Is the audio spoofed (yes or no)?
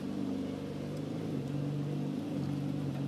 no